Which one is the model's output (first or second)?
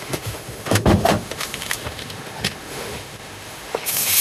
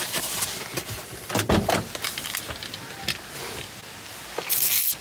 first